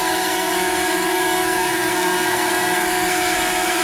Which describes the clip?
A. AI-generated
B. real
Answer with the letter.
A